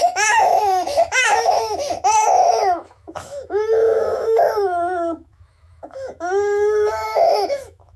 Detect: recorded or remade remade